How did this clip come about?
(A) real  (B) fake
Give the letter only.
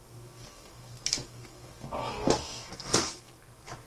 B